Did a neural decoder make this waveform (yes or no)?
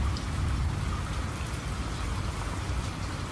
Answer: no